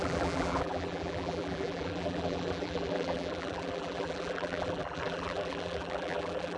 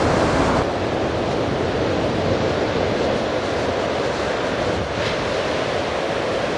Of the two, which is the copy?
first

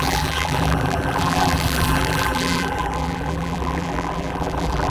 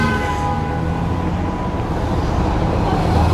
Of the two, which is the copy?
first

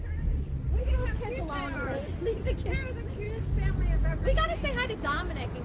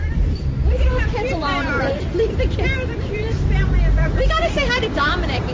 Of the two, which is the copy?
second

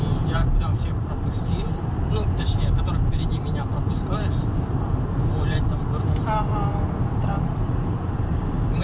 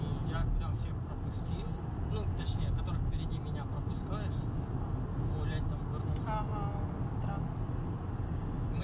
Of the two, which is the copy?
first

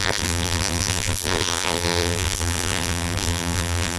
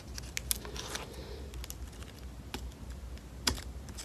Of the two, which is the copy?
first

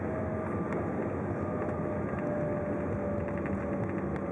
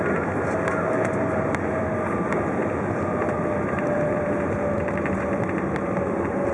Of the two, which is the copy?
second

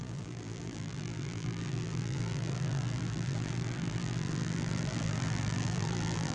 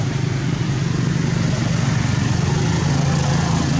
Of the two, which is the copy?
first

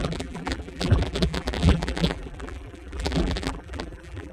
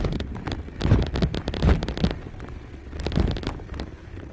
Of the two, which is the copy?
first